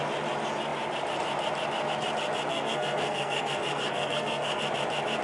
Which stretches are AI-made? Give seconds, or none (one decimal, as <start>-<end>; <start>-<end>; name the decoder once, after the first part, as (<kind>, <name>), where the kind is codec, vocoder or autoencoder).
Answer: 2.5-4.6 (codec, SNAC)